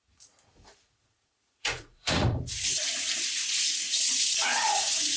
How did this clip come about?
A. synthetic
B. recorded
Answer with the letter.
A